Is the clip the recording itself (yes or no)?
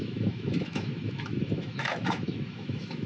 no